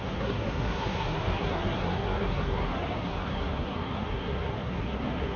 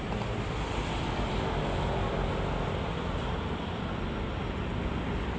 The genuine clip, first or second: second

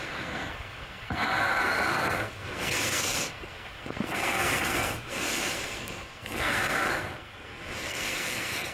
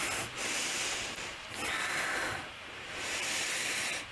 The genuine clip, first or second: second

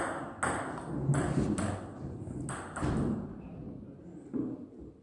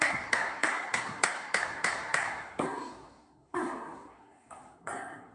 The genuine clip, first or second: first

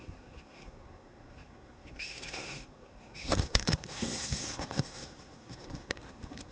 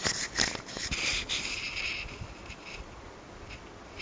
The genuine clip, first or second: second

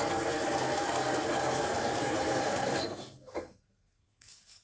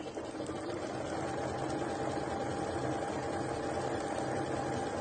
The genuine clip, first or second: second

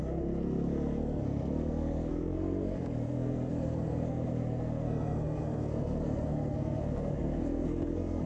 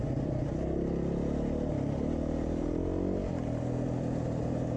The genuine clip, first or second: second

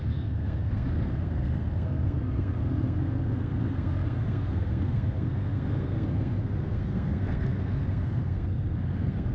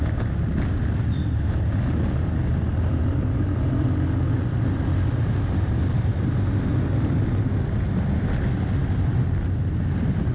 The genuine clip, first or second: second